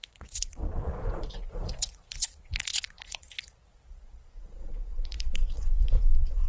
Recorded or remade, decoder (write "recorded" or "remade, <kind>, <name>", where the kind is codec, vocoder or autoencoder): remade, vocoder, Vocos